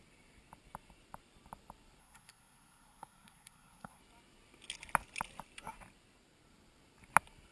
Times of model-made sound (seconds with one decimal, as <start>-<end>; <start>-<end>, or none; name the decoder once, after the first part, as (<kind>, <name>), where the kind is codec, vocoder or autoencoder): 2.0-4.0 (codec, SNAC)

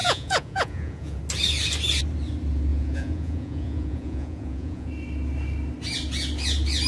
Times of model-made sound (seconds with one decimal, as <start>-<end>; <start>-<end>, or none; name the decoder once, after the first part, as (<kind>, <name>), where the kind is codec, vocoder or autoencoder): 0.0-1.2 (vocoder, Vocos); 2.7-4.9

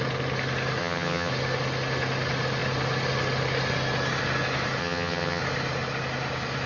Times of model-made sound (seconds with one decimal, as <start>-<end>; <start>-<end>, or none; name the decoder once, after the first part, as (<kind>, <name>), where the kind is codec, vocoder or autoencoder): 0.8-1.3 (vocoder, HiFi-GAN); 4.8-5.4

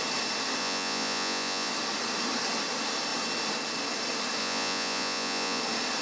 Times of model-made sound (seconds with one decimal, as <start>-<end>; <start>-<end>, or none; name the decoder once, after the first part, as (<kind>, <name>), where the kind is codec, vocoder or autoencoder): 0.6-1.7 (vocoder, Vocos); 4.4-5.6

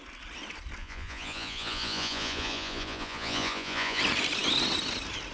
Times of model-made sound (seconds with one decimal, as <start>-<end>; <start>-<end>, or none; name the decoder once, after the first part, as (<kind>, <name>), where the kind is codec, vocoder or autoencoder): 0.8-4.0 (vocoder, Vocos)

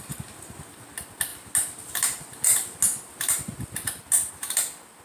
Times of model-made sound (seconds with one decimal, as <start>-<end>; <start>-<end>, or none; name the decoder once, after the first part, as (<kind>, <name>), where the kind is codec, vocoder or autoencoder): none

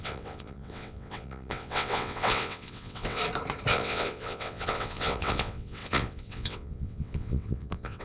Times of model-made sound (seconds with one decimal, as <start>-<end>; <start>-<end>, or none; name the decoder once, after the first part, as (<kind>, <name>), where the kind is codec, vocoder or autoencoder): 0.0-3.2 (vocoder, WaveNeXt); 3.7-8.0

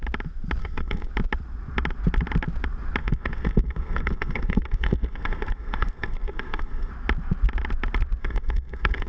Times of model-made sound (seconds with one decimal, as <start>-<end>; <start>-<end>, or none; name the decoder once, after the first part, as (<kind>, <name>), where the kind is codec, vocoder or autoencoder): 0.6-1.1 (codec, SNAC); 3.0-6.9; 8.2-9.1